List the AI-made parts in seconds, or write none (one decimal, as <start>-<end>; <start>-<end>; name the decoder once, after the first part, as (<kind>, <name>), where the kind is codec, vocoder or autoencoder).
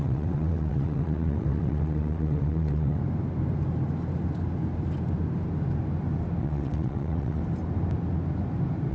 0.0-3.0 (vocoder, WaveNeXt); 6.4-7.4